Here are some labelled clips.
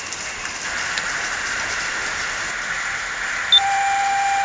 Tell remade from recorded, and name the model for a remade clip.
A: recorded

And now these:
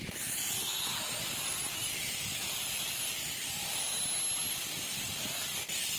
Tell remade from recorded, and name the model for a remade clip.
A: recorded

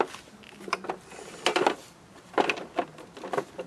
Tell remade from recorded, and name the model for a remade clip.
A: recorded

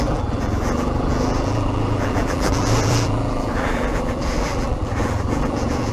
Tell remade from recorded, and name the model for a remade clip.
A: remade, vocoder, BigVGAN v2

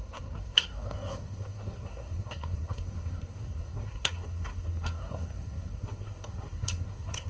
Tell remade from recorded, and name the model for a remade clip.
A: remade, codec, SNAC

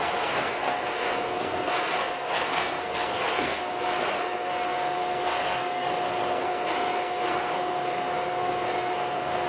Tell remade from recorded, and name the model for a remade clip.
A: remade, codec, SNAC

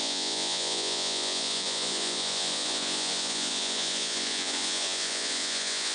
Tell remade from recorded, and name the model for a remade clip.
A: remade, vocoder, Vocos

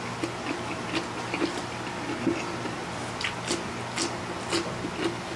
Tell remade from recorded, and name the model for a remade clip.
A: recorded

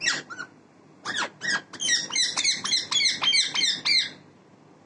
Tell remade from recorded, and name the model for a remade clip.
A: recorded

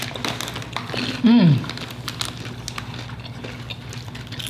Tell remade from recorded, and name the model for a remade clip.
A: recorded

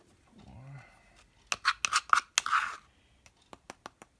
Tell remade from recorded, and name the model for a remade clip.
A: recorded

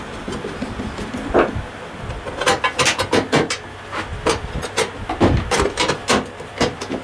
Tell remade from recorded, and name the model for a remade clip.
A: recorded